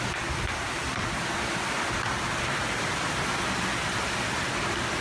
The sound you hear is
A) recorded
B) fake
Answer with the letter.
A